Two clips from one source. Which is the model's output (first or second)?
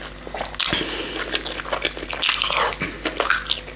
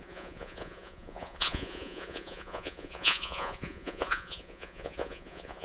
second